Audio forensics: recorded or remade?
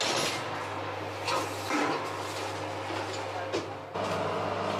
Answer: recorded